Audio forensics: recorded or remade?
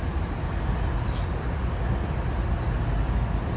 recorded